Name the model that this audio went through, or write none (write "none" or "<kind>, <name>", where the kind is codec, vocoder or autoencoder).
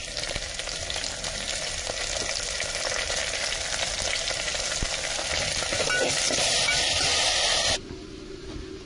none